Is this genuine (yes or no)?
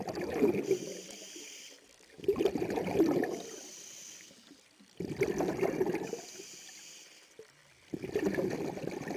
yes